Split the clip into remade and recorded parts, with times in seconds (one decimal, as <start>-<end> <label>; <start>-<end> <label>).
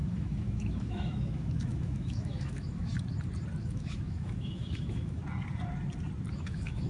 0.0-2.9 remade; 2.9-3.6 recorded; 3.6-5.2 remade; 5.2-6.3 recorded; 6.3-6.9 remade